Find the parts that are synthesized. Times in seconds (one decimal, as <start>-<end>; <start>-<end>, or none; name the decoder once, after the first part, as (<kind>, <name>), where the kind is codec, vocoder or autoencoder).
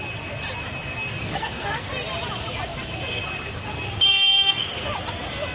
1.2-1.9 (codec, SNAC); 4.1-4.9